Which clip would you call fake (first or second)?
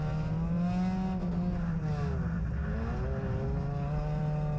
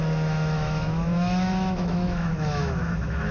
second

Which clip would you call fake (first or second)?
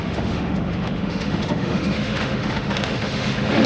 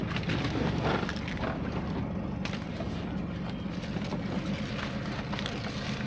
first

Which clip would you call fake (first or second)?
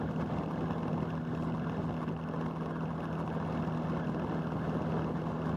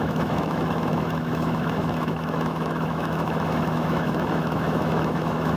second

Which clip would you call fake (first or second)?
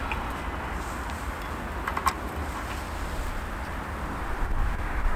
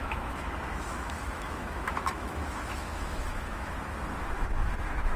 second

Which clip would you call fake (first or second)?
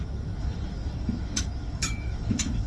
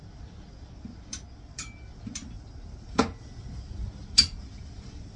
first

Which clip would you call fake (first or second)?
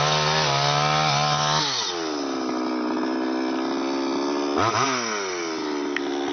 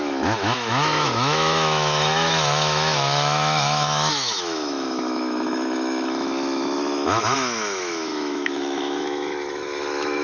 second